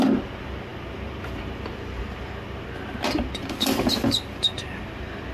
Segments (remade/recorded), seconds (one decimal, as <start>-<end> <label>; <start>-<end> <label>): 0.0-5.3 recorded